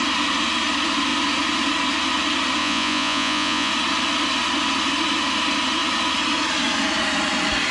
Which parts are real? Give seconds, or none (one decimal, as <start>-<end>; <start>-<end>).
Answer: 0.0-2.6; 3.7-7.7